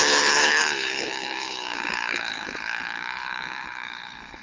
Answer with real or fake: fake